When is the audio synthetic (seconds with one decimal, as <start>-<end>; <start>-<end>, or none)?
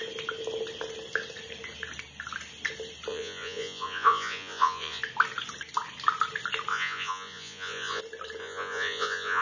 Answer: 3.1-5.0; 6.7-8.0; 8.4-9.4